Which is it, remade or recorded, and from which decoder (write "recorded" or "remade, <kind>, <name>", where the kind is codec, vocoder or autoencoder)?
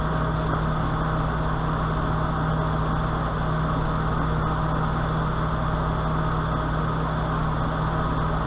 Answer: recorded